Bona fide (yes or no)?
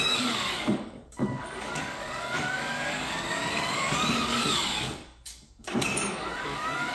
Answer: no